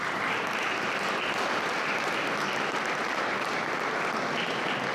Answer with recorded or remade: recorded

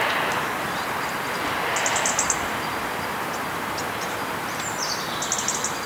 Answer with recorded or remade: recorded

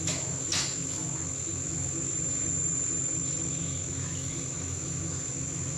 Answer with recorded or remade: remade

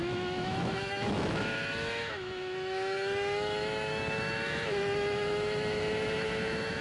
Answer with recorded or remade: remade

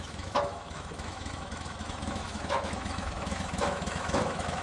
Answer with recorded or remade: remade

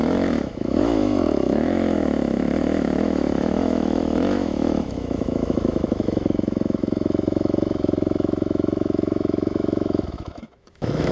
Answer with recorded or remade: remade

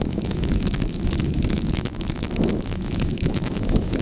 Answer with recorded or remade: remade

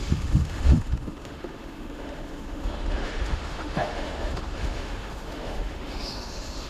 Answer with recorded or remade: remade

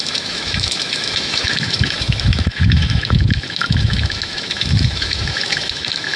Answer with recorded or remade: remade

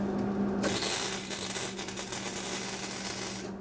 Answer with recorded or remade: recorded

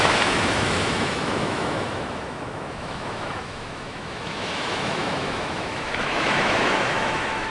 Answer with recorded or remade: remade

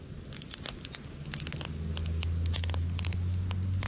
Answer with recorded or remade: recorded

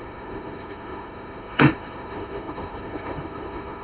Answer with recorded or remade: remade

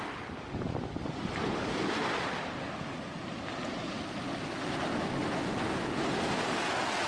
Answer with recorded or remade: recorded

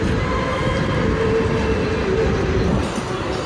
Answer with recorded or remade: recorded